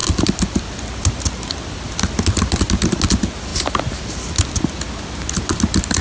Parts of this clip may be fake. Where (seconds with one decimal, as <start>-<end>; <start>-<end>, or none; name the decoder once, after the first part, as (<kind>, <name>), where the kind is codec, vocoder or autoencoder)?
0.0-1.6 (vocoder, BigVGAN v2)